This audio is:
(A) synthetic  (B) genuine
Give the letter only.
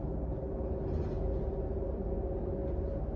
B